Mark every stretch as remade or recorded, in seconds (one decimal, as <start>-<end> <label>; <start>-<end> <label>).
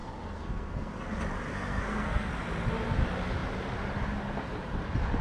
0.0-0.9 remade; 0.9-1.5 recorded; 1.5-2.3 remade; 2.3-5.2 recorded